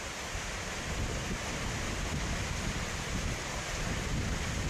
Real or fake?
fake